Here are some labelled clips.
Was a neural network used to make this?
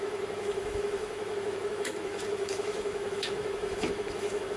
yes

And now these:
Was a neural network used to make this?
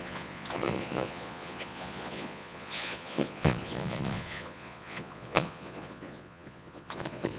yes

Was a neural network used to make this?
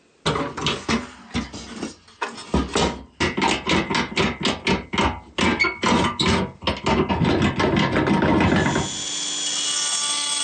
no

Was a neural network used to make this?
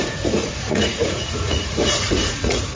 yes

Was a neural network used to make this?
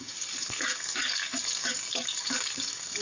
yes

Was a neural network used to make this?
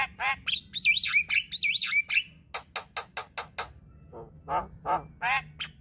no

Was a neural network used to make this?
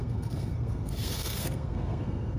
yes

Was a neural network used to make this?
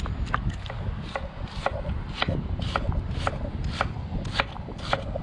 no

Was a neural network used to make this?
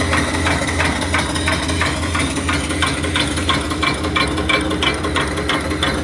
no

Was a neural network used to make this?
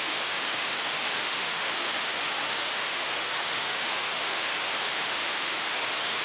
yes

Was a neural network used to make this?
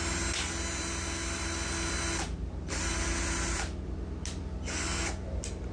no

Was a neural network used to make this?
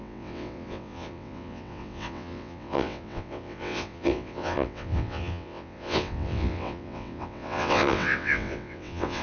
yes